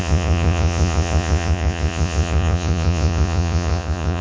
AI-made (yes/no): yes